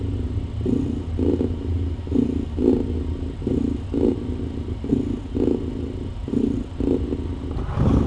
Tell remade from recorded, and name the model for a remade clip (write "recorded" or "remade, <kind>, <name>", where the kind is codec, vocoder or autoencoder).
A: recorded